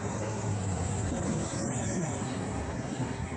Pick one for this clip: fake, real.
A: fake